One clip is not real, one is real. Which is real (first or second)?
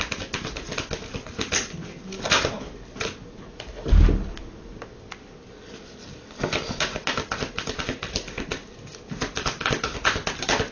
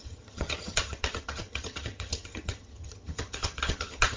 first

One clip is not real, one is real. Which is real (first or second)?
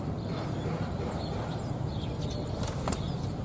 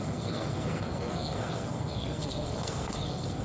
first